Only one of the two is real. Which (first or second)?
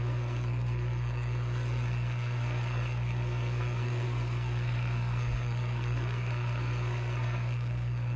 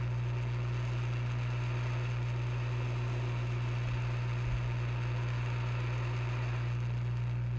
second